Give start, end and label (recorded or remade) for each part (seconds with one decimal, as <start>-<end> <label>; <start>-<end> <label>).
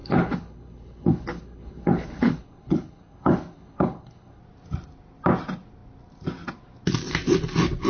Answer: 0.0-4.4 remade; 4.4-7.9 recorded